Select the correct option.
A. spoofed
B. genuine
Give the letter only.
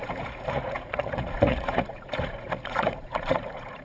A